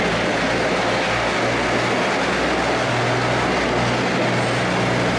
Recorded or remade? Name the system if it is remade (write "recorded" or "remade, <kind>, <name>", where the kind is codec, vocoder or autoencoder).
recorded